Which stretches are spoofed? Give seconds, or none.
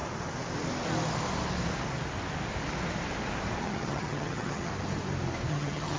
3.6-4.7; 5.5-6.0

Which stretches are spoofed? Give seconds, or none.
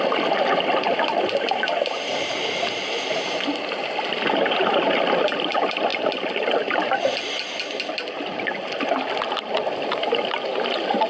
none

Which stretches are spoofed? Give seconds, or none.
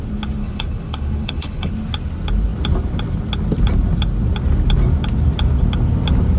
0.4-1.7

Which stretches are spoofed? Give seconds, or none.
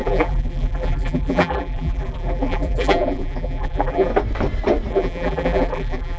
0.0-4.1; 4.9-6.2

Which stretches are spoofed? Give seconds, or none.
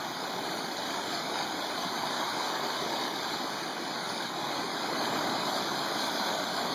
0.0-6.7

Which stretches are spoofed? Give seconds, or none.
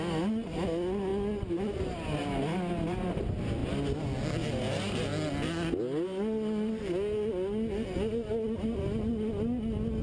none